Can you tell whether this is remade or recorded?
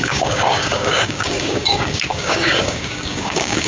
remade